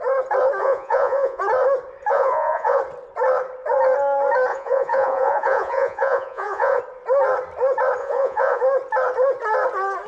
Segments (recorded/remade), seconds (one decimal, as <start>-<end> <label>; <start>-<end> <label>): 0.0-0.6 recorded; 0.6-1.4 remade; 1.4-2.1 recorded; 2.1-2.8 remade; 2.8-4.5 recorded; 4.5-6.8 remade; 6.8-8.0 recorded; 8.0-8.6 remade; 8.6-10.1 recorded